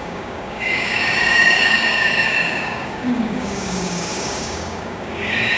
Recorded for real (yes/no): no